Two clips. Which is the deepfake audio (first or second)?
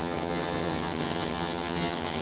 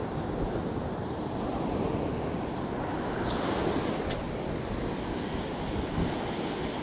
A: first